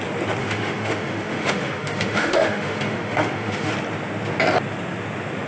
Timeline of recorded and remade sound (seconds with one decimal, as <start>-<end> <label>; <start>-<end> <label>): 0.0-0.4 recorded; 0.4-3.7 remade; 3.7-5.5 recorded